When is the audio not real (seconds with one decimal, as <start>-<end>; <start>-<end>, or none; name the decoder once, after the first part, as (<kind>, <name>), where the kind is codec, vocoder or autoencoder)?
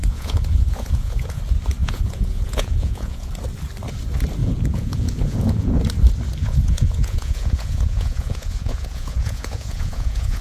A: 0.0-1.4 (vocoder, Vocos); 1.8-3.3; 4.4-5.8; 6.4-10.4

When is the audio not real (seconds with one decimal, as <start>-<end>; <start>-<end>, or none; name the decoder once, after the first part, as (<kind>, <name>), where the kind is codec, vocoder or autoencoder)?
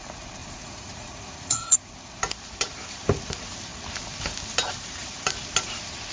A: 0.4-1.9 (vocoder, Vocos)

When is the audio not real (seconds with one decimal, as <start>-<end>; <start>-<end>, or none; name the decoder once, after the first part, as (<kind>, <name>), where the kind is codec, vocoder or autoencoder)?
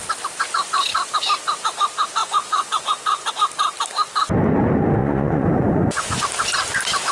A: 2.2-3.3 (vocoder, Vocos); 5.0-6.2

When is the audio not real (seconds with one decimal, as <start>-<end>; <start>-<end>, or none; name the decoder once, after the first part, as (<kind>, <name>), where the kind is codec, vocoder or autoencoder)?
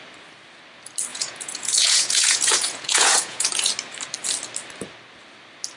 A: 1.1-3.7 (vocoder, Vocos)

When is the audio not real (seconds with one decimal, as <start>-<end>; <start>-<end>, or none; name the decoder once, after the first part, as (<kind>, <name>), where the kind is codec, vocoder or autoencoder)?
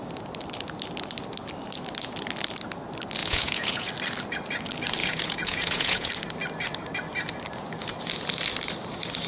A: 3.2-3.9 (vocoder, Vocos); 5.0-6.1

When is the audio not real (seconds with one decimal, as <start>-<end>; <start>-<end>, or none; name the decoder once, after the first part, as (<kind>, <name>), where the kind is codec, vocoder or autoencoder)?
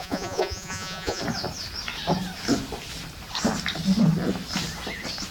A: 0.0-1.2 (vocoder, Vocos)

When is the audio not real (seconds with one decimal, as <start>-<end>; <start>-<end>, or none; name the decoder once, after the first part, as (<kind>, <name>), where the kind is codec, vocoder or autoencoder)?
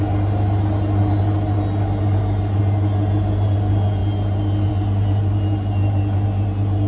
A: none